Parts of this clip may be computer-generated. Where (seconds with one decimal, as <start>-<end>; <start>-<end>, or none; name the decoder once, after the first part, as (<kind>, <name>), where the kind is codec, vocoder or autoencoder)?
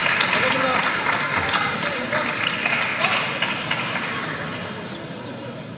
none